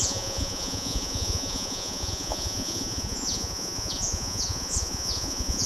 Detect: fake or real fake